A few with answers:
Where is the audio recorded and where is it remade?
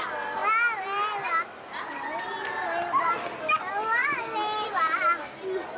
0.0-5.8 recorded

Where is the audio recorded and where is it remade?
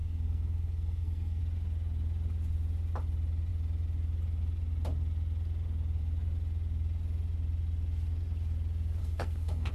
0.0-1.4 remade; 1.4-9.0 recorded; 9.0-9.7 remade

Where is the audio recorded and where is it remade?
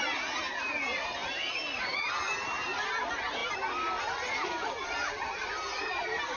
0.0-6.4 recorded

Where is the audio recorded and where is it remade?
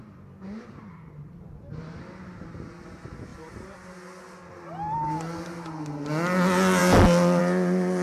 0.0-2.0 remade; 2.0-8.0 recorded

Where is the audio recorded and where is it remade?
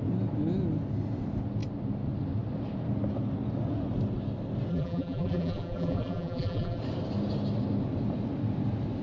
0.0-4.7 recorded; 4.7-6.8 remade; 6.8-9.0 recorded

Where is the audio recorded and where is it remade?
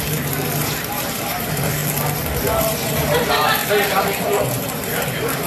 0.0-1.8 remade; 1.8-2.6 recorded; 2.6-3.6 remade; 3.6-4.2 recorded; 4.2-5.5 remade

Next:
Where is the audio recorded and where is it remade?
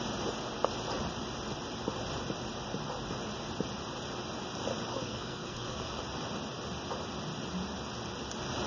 0.0-4.9 recorded; 4.9-6.0 remade; 6.0-8.7 recorded